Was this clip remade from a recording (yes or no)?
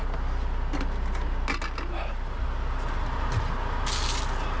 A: no